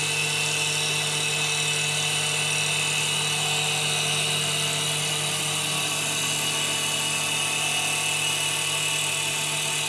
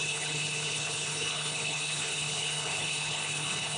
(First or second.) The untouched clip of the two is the first